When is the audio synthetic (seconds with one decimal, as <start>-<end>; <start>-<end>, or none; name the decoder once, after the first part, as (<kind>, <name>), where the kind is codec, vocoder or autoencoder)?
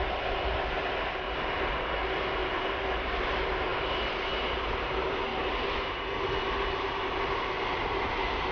none